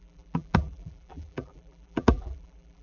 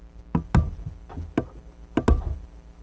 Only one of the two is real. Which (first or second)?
second